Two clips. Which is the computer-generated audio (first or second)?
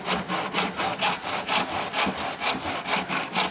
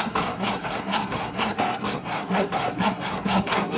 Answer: second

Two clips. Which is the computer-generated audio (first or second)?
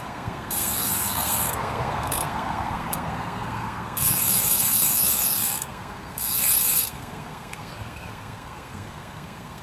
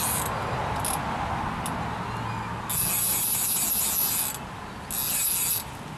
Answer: first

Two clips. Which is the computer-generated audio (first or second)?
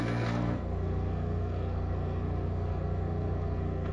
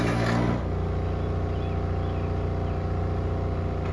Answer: first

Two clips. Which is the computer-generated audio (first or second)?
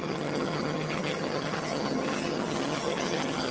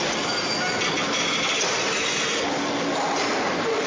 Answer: first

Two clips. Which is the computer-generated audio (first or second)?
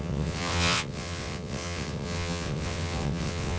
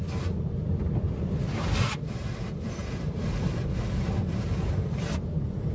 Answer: first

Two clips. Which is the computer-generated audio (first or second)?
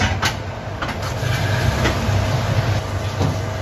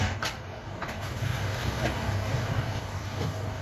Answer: second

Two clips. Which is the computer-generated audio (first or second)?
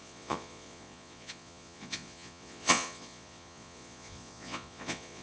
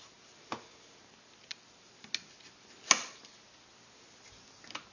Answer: first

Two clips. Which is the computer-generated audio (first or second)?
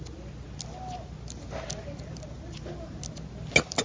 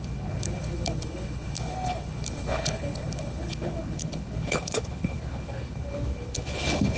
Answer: second